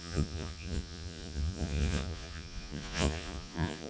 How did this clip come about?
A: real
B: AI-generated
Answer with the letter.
B